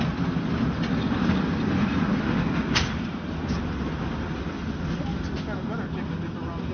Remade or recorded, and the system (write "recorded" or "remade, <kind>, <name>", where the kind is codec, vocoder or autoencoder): recorded